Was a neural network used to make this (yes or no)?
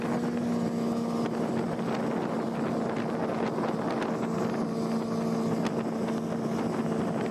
no